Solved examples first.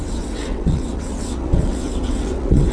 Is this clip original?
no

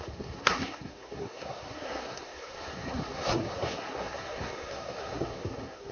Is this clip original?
no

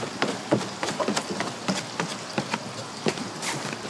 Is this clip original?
yes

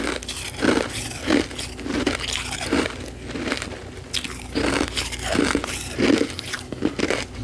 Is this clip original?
yes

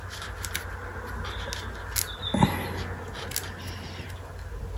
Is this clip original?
yes